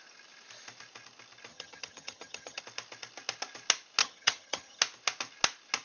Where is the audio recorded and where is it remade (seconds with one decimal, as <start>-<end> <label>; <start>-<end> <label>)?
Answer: 0.0-1.5 recorded; 1.5-2.6 remade; 2.6-4.0 recorded; 4.0-4.8 remade; 4.8-5.8 recorded

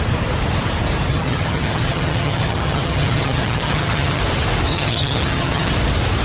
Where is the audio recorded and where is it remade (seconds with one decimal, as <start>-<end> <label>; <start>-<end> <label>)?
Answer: 0.0-1.1 recorded; 1.1-4.2 remade; 4.2-4.7 recorded; 4.7-5.7 remade; 5.7-6.2 recorded

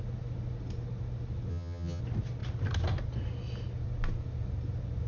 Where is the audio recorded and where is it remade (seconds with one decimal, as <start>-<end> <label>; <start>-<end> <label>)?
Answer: 0.0-1.5 recorded; 1.5-2.0 remade; 2.0-5.1 recorded

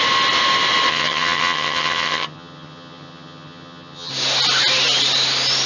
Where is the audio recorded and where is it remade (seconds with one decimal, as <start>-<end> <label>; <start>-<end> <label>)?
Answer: 0.0-0.9 recorded; 0.9-4.1 remade; 4.1-5.7 recorded

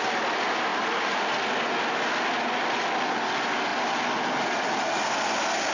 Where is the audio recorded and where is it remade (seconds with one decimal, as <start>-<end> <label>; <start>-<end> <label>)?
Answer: 0.0-5.7 recorded